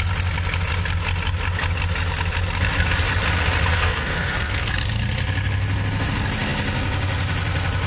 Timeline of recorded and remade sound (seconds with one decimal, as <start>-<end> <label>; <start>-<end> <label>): 0.0-3.7 recorded; 3.7-4.7 remade; 4.7-7.9 recorded